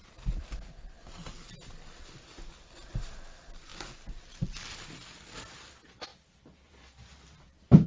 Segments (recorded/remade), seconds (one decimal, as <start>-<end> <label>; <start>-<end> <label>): 0.0-7.9 recorded